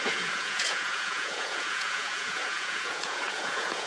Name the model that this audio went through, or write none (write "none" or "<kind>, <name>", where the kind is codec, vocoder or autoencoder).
vocoder, Vocos